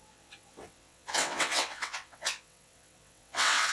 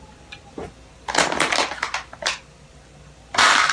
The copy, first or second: first